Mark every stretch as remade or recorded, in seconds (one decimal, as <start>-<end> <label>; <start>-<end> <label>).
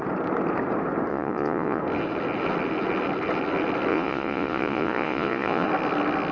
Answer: 0.0-1.1 recorded; 1.1-1.8 remade; 1.8-3.9 recorded; 3.9-5.7 remade; 5.7-6.3 recorded